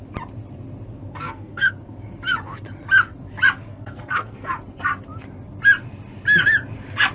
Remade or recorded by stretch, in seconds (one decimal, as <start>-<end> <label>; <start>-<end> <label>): 0.0-1.1 recorded; 1.1-1.7 remade; 1.7-3.7 recorded; 3.7-4.5 remade; 4.5-7.1 recorded